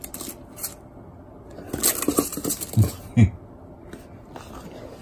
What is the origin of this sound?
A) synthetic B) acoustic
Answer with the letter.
B